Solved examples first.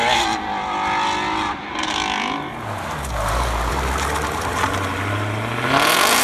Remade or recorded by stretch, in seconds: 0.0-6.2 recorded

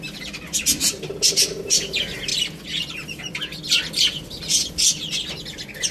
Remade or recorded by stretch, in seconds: 0.0-5.9 recorded

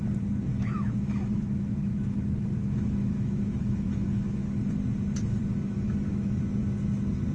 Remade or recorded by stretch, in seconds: 0.0-0.5 recorded; 0.5-4.6 remade; 4.6-5.4 recorded; 5.4-6.4 remade; 6.4-7.3 recorded

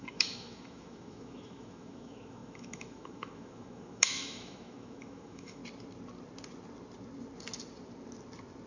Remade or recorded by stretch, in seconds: 0.0-5.6 remade; 5.6-8.7 recorded

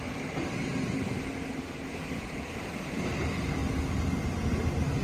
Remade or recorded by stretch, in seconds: 0.0-5.0 recorded